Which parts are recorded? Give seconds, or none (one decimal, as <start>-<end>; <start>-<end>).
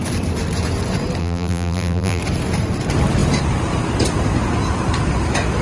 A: 0.0-1.2; 2.2-5.6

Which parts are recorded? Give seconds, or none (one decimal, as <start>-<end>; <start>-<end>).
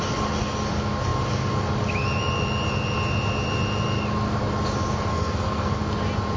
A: 0.0-5.1; 5.8-6.4